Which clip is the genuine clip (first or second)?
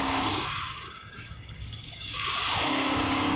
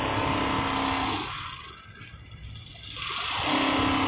second